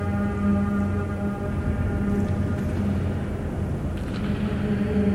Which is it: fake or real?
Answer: real